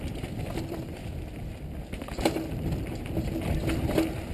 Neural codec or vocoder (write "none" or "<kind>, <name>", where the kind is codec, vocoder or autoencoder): none